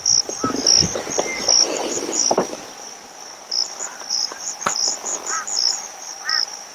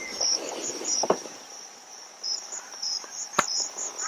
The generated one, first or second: second